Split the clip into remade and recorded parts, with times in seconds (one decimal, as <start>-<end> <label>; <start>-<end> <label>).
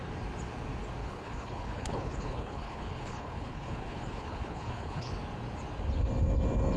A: 0.0-1.0 recorded; 1.0-5.1 remade; 5.1-6.8 recorded